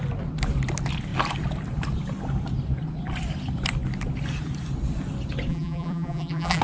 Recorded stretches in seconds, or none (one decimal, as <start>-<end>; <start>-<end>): 0.0-5.5